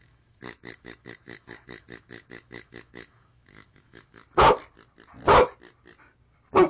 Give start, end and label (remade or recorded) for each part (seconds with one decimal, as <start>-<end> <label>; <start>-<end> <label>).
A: 0.0-4.2 remade; 4.2-6.7 recorded